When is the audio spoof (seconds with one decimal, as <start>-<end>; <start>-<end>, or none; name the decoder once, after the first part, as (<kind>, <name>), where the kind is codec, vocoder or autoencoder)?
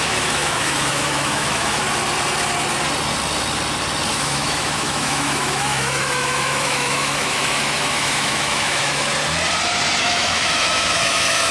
0.0-1.8 (autoencoder, DAC-VAE); 4.1-9.1; 10.0-11.5